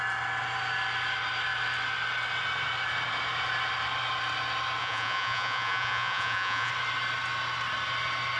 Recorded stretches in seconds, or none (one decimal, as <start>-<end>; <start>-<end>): 0.0-4.8; 6.7-8.4